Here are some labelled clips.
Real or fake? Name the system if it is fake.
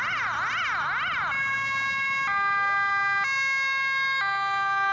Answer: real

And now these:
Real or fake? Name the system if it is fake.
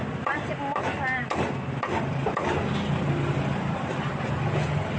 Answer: real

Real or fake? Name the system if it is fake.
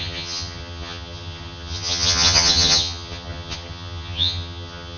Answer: fake, vocoder, HiFi-GAN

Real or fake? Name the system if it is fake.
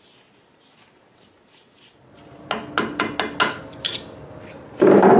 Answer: real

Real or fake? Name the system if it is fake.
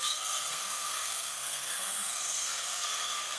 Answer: fake, codec, SNAC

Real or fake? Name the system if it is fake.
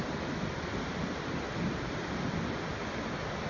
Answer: real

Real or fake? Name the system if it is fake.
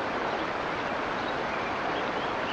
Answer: real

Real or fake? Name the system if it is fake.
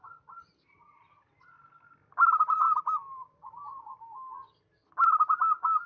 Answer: real